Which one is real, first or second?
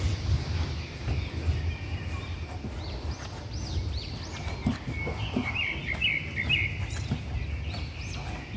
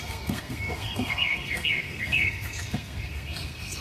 first